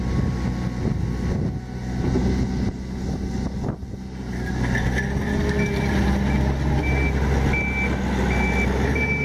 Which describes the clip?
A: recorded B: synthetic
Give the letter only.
A